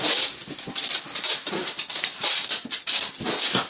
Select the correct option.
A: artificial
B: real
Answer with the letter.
B